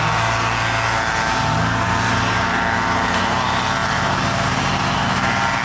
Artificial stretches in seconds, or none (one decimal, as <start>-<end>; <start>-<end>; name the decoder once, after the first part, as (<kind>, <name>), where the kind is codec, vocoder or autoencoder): none